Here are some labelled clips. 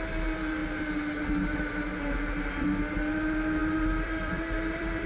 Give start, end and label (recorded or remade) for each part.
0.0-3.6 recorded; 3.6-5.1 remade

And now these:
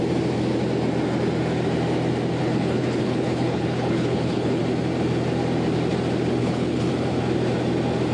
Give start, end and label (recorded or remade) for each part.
0.0-2.4 recorded; 2.4-4.6 remade; 4.6-6.4 recorded; 6.4-6.9 remade; 6.9-8.1 recorded

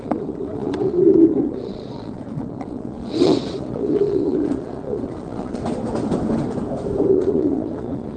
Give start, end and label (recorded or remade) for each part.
0.0-5.6 remade; 5.6-7.1 recorded; 7.1-8.2 remade

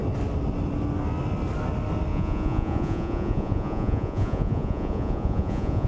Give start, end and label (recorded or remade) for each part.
0.0-2.1 recorded; 2.1-5.9 remade

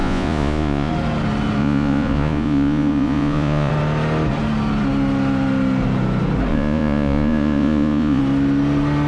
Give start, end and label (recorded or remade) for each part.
0.0-0.9 remade; 0.9-1.6 recorded; 1.6-3.7 remade; 3.7-6.5 recorded; 6.5-8.2 remade; 8.2-9.1 recorded

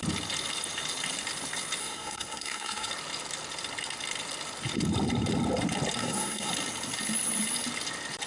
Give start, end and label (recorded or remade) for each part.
0.0-1.8 recorded; 1.8-2.9 remade; 2.9-6.0 recorded; 6.0-6.5 remade; 6.5-8.3 recorded

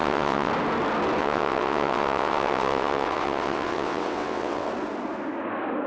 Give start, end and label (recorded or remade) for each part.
0.0-0.5 remade; 0.5-1.2 recorded; 1.2-4.7 remade; 4.7-5.9 recorded